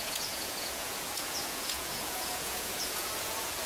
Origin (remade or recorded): remade